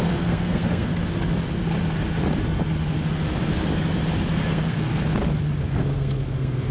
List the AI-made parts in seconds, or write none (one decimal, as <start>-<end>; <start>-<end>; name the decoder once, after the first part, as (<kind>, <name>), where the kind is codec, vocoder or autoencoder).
0.0-0.9 (codec, SNAC); 4.3-4.9; 5.7-6.7